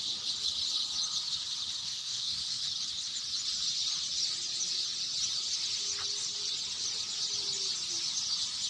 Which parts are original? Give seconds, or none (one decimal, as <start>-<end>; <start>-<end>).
0.0-1.8; 2.6-8.7